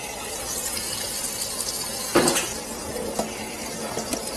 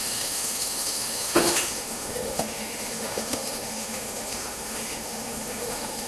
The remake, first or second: second